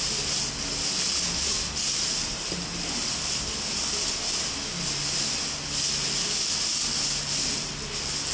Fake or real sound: real